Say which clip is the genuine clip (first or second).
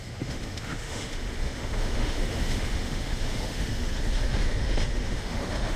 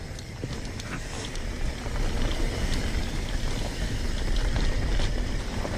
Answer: second